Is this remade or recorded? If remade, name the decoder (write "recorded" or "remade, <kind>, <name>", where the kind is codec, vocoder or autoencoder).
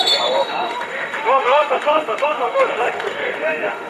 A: remade, autoencoder, DAC-VAE